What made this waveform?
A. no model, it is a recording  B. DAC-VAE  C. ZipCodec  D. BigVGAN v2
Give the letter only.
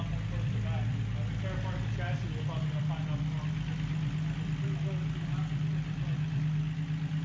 A